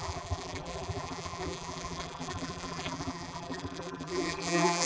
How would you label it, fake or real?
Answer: fake